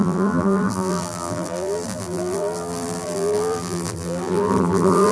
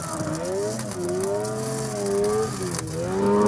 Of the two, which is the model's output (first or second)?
first